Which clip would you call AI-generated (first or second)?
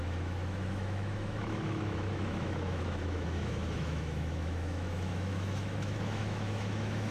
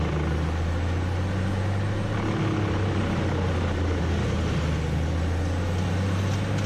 first